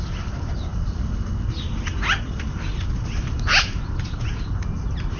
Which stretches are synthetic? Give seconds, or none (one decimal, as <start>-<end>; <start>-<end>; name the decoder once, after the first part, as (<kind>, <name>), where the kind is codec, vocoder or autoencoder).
none